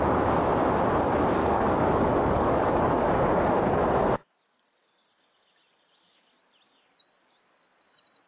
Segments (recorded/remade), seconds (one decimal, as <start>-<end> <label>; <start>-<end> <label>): 0.0-1.4 recorded; 1.4-3.1 remade; 3.1-8.3 recorded

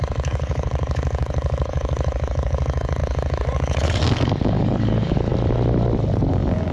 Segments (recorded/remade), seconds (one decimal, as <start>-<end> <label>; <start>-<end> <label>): 0.0-5.3 remade; 5.3-6.3 recorded; 6.3-6.7 remade